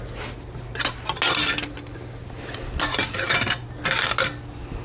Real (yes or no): yes